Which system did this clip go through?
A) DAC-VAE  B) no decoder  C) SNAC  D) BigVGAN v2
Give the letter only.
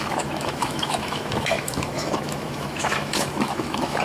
A